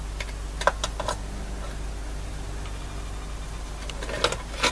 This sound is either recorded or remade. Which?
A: recorded